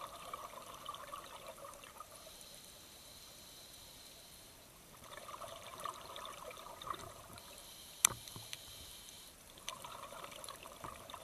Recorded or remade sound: remade